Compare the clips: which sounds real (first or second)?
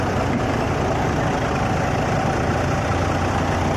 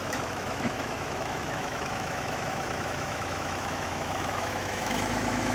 first